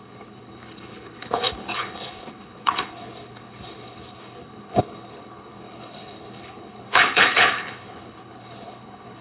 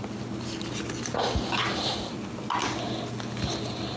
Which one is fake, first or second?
first